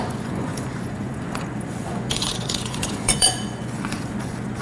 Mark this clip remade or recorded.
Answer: remade